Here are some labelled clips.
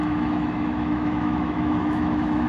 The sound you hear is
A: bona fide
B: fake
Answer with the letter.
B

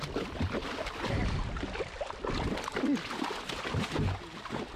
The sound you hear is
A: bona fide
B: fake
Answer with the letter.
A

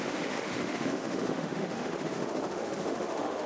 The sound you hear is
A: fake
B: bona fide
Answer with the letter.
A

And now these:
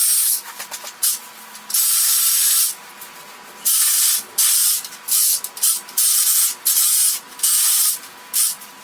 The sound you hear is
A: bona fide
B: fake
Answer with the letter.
A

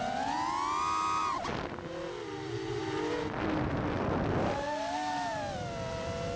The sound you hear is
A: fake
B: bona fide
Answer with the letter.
B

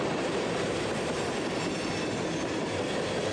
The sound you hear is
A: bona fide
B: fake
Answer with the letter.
A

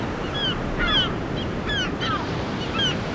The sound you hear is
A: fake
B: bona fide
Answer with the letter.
B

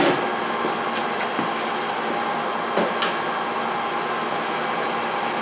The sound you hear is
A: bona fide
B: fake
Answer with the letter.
A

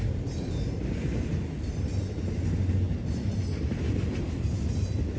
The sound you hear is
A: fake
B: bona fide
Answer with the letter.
B